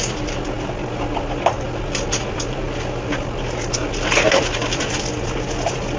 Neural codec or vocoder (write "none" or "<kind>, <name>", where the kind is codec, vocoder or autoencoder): none